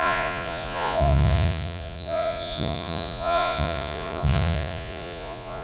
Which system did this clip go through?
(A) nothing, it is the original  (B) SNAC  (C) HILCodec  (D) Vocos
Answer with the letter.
D